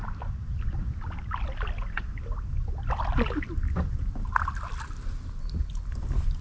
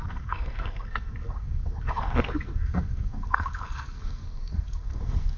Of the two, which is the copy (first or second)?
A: second